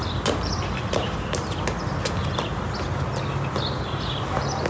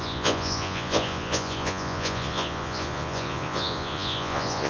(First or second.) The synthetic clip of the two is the second